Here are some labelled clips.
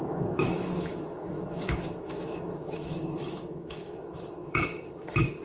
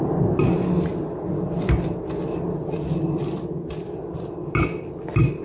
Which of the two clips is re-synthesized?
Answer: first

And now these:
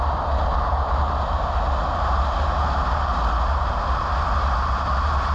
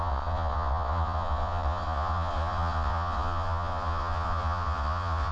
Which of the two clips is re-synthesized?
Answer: second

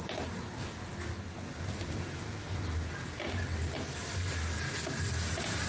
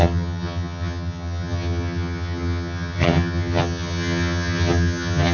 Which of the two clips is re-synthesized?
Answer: second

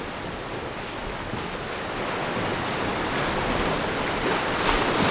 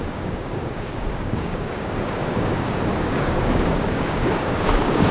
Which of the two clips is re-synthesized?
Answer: second